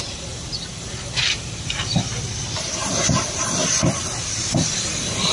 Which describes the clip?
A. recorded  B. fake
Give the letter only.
B